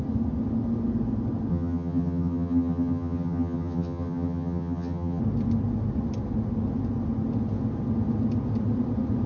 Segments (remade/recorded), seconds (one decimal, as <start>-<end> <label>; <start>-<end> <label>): 0.0-1.5 recorded; 1.5-5.2 remade; 5.2-9.3 recorded

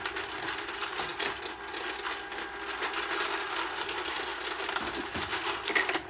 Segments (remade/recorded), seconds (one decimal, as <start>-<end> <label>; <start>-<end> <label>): 0.0-6.1 recorded

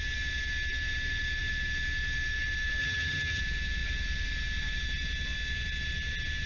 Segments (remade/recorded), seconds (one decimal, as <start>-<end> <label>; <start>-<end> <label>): 0.0-2.8 recorded; 2.8-3.4 remade; 3.4-6.5 recorded

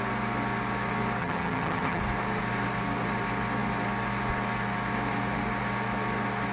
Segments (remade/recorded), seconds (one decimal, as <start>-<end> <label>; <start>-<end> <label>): 0.0-1.2 recorded; 1.2-2.0 remade; 2.0-6.5 recorded

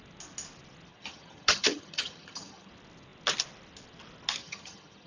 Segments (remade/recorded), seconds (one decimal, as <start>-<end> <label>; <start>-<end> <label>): 0.0-0.9 recorded; 0.9-2.7 remade; 2.7-4.4 recorded; 4.4-5.1 remade